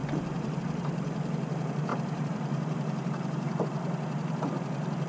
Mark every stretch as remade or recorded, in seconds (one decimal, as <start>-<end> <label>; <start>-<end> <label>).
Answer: 0.0-0.6 remade; 0.6-1.9 recorded; 1.9-3.6 remade; 3.6-5.1 recorded